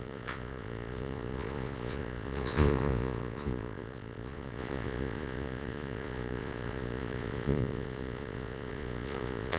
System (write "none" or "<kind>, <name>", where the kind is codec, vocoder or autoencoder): vocoder, Vocos